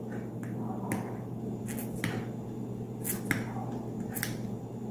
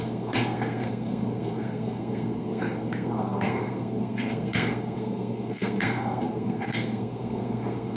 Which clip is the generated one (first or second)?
second